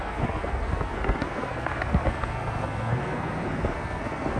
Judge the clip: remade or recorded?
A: remade